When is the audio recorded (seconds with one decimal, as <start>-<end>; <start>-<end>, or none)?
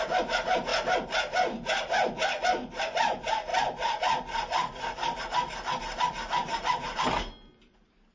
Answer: 0.0-6.4; 7.0-8.1